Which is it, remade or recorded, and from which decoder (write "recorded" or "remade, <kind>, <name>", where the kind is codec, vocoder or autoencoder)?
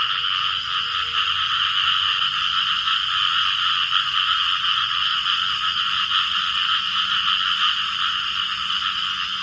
recorded